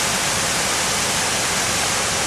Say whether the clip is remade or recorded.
recorded